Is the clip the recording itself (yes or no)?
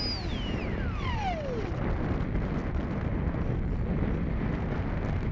yes